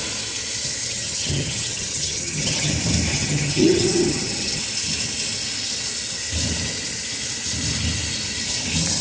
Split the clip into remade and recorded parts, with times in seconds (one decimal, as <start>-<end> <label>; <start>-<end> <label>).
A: 0.0-0.8 recorded; 0.8-2.7 remade; 2.7-3.1 recorded; 3.1-4.6 remade; 4.6-9.0 recorded